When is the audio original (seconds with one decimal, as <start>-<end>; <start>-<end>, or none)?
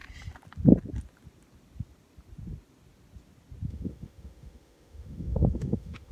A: 0.0-3.7